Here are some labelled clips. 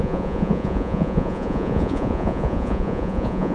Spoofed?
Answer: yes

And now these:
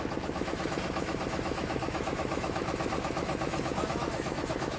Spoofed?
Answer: yes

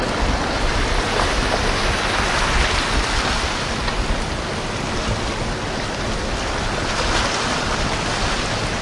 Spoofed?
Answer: no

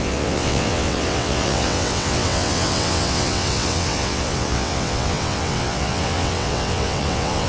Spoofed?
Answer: yes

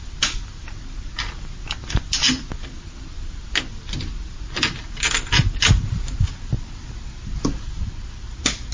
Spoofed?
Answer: no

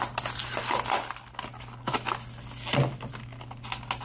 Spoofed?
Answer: no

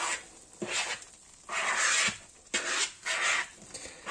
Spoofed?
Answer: no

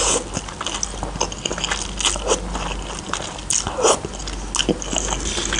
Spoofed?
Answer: no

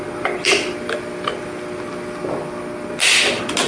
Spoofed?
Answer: no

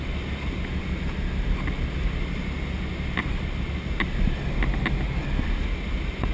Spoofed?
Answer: no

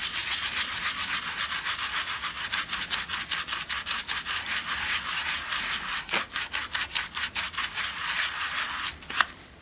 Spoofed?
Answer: no